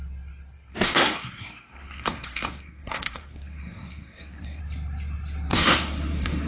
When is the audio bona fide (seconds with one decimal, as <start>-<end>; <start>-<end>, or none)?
0.0-0.7; 4.6-5.5

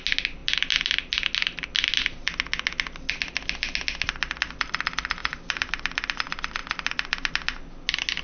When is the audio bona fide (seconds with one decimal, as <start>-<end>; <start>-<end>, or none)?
0.0-8.2

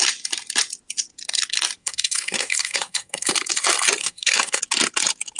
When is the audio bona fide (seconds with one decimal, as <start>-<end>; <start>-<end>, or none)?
0.0-1.8; 3.3-4.0; 4.6-5.4

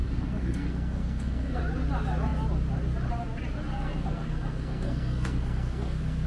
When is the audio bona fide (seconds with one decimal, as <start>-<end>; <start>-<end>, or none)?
1.6-3.7

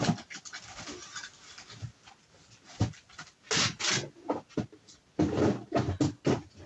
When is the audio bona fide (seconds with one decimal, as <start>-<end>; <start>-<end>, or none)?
0.0-6.7

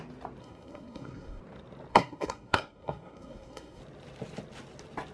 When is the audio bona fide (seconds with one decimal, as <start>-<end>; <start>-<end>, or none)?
0.0-0.4; 1.4-1.9; 3.8-5.1

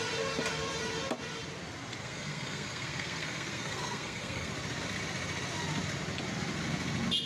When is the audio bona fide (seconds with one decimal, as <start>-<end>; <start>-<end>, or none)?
0.0-2.0; 4.5-7.3